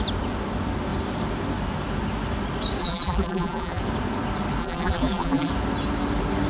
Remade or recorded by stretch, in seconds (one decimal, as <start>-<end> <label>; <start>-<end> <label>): 0.0-2.8 recorded; 2.8-3.8 remade; 3.8-4.6 recorded; 4.6-5.5 remade; 5.5-6.5 recorded